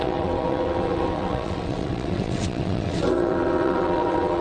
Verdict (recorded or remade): remade